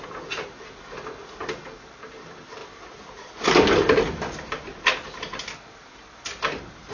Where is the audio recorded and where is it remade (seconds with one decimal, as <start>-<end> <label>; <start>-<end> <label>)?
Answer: 0.0-6.9 recorded